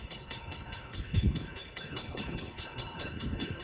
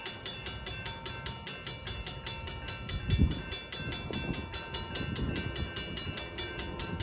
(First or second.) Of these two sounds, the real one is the second